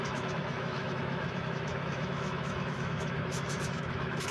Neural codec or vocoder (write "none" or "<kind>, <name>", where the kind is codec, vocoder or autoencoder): autoencoder, DAC-VAE